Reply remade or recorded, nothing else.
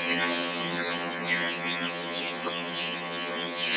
remade